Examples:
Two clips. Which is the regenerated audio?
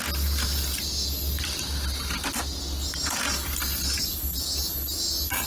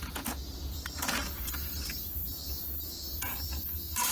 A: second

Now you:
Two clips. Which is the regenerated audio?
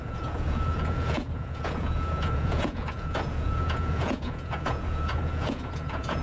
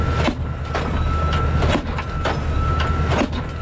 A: first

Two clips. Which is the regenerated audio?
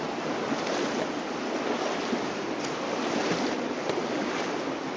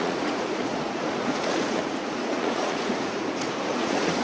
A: second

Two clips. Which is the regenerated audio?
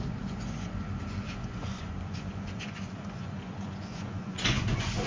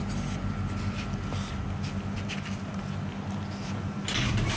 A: first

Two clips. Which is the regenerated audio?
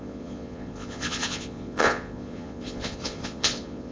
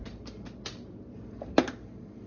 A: first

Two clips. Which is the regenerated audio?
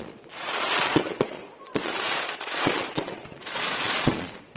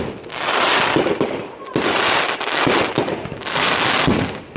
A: first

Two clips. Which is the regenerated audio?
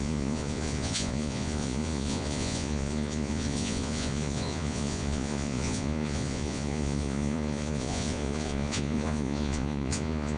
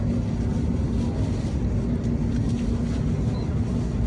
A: first